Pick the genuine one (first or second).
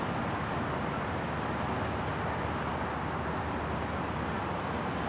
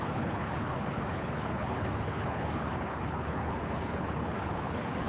first